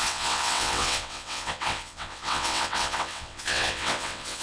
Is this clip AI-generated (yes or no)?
yes